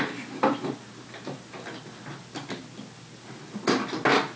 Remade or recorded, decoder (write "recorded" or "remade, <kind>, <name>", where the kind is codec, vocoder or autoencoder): recorded